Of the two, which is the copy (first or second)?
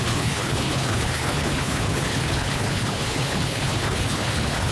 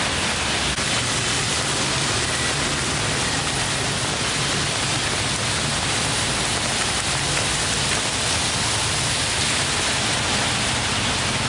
first